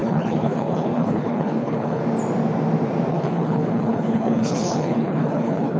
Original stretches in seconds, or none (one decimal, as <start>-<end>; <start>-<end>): 2.0-3.1